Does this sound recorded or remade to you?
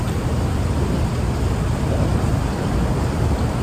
recorded